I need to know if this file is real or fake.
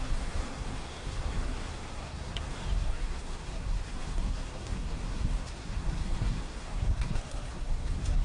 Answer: fake